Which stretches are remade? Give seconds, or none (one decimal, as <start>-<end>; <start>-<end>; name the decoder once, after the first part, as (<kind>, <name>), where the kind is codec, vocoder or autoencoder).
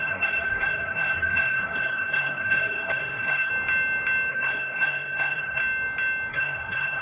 0.0-3.5 (codec, SNAC); 4.3-5.6; 6.3-7.0